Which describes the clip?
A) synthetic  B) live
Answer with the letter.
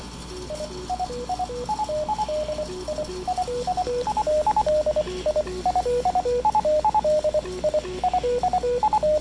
B